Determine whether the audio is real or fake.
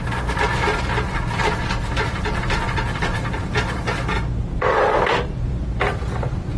fake